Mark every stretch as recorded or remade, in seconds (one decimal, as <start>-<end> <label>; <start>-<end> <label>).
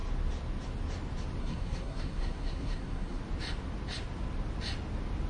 0.0-1.4 recorded; 1.4-3.2 remade; 3.2-5.3 recorded